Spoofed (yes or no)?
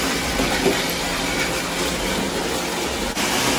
no